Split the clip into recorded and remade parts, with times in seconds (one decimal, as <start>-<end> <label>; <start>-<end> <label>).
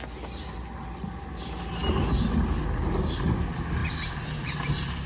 0.0-5.1 recorded